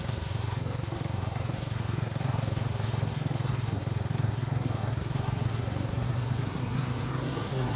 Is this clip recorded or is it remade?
remade